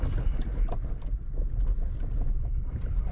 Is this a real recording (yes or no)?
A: yes